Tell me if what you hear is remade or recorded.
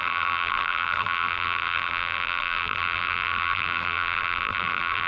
remade